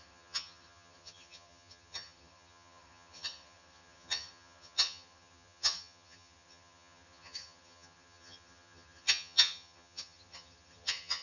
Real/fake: fake